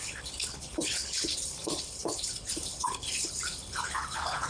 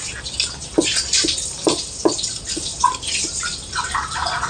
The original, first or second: second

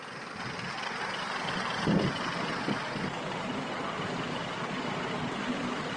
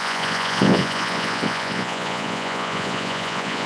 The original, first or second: first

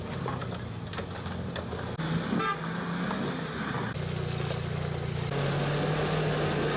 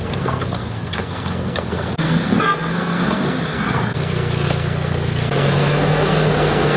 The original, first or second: first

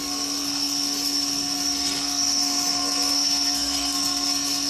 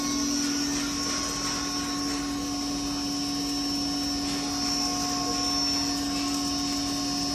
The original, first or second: second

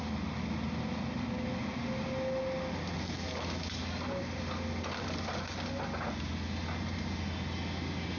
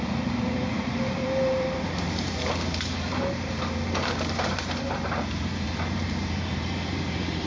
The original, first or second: first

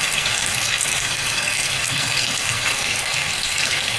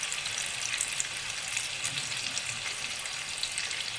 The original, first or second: second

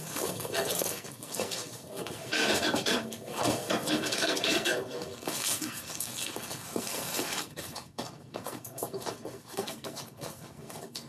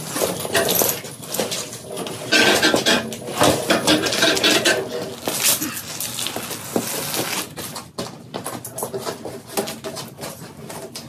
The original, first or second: second